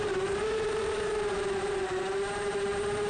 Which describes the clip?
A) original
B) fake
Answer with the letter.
B